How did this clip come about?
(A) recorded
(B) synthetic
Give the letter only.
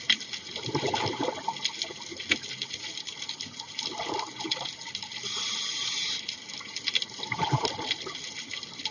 A